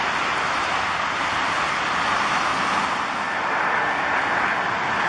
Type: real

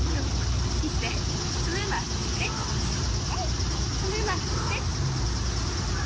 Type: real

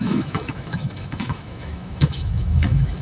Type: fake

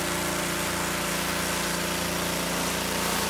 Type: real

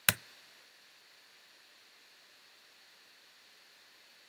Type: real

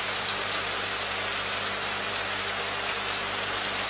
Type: real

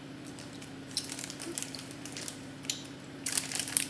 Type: real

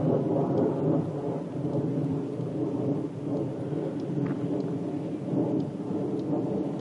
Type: real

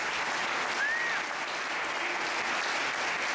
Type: real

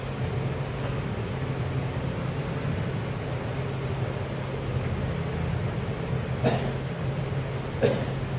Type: real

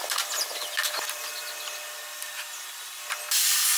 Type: real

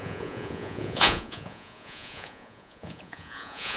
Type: fake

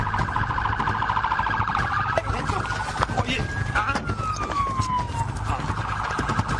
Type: real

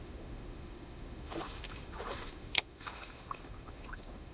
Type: fake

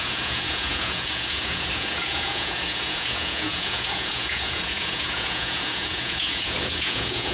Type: fake